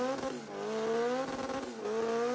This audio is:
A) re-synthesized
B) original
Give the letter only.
B